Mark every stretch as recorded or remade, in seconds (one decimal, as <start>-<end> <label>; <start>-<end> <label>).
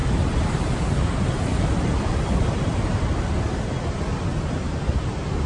0.0-3.3 remade; 3.3-5.5 recorded